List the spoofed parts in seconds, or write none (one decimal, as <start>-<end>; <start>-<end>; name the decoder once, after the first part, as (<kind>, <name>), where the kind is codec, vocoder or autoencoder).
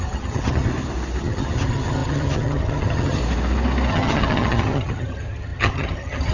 0.0-0.7 (vocoder, HiFi-GAN); 1.2-3.2; 3.9-6.3